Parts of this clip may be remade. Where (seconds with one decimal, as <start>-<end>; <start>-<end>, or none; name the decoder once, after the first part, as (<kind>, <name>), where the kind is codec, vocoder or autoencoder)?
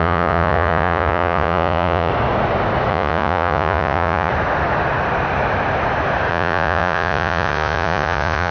0.0-2.1 (vocoder, Vocos); 2.9-4.3; 6.3-8.5